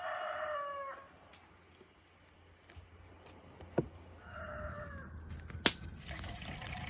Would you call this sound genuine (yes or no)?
yes